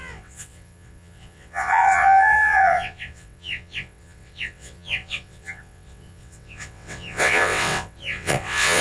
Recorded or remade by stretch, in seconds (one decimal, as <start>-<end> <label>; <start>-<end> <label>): 0.0-8.8 remade